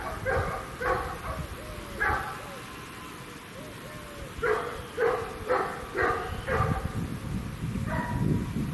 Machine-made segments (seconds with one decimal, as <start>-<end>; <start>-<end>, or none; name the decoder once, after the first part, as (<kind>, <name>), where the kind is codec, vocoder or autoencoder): none